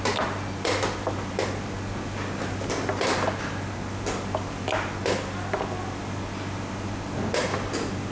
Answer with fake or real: real